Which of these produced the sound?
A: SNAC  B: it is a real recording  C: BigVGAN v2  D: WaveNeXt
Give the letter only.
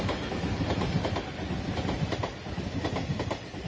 B